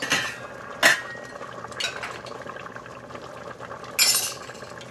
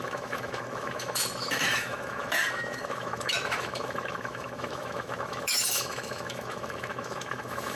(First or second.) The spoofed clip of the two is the second